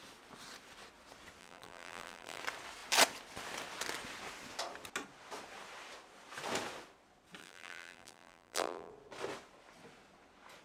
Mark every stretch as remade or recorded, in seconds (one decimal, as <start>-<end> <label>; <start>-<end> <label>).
0.0-1.4 recorded; 1.4-2.4 remade; 2.4-7.4 recorded; 7.4-8.9 remade; 8.9-10.6 recorded